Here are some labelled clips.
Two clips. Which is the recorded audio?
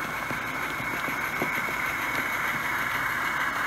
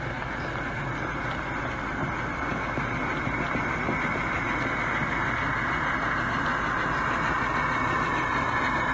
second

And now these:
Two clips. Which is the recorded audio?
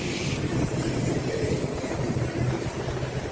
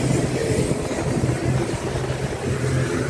second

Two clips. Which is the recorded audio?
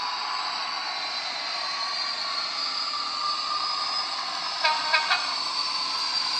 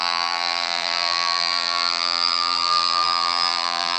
first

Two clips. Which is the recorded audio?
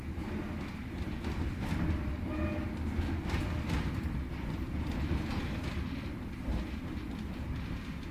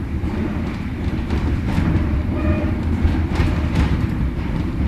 first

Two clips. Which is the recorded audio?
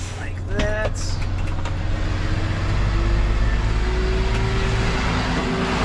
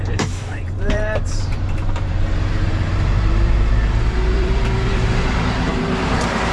first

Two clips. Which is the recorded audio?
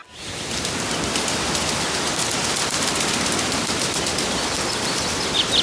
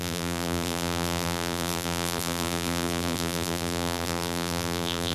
first